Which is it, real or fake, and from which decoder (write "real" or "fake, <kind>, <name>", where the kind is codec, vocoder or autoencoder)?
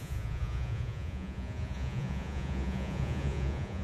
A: fake, vocoder, Vocos